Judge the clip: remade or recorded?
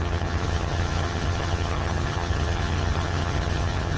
remade